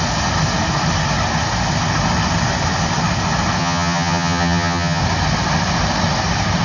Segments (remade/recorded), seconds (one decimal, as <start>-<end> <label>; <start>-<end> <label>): 0.0-3.6 recorded; 3.6-5.0 remade; 5.0-6.6 recorded